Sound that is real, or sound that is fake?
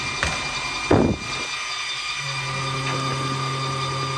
real